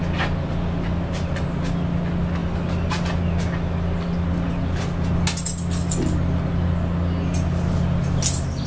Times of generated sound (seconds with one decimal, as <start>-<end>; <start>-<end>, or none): none